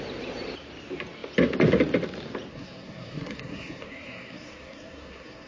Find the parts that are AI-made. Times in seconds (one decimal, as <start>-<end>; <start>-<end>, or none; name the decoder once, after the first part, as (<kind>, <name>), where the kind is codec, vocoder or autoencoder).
2.5-5.5 (codec, SNAC)